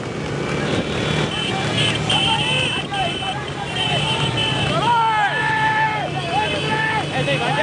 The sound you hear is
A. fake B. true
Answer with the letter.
B